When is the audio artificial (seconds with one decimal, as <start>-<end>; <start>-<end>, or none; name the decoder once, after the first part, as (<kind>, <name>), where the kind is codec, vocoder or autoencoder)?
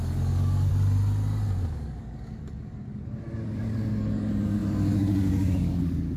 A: 0.0-0.7 (codec, DAC); 1.6-6.2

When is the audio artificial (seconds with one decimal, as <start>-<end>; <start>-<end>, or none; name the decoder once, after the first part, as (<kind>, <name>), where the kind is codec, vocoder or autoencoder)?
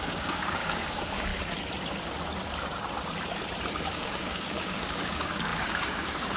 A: 0.0-1.3 (codec, DAC); 3.9-6.4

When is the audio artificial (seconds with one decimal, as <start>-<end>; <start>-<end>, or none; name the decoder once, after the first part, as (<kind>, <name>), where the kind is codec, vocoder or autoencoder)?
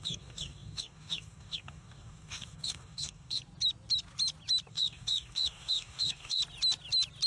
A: 0.0-3.4 (codec, DAC); 4.7-6.4